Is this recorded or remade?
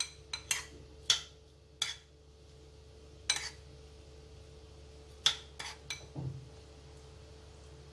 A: recorded